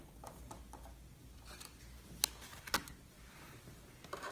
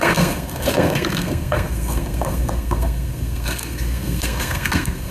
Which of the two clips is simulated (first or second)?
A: second